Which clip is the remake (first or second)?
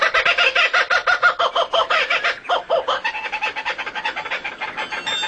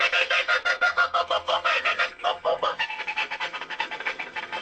second